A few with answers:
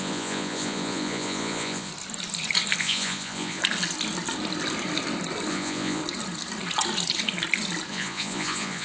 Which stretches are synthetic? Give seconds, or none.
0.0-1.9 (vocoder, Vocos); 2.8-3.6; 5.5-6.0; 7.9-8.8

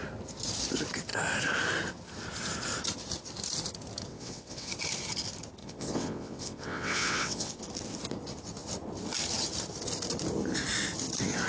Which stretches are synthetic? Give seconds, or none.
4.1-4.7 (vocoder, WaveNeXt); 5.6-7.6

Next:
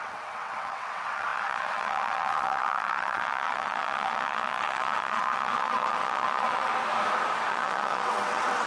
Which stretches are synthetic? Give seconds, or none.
0.0-6.7 (vocoder, WaveNeXt); 7.5-8.7

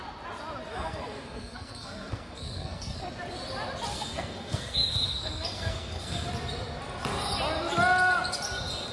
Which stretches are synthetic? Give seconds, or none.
0.7-3.0 (codec, SNAC); 3.9-6.3

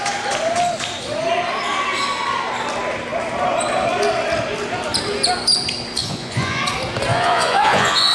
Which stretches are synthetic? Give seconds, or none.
6.0-6.6 (vocoder, Vocos); 7.1-8.1

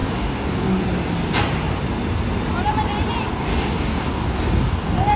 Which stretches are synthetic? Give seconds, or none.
0.0-0.8 (codec, DAC); 3.3-5.2

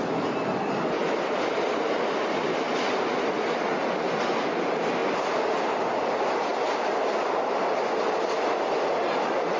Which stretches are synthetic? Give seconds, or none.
none